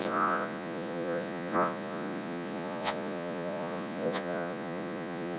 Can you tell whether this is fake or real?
fake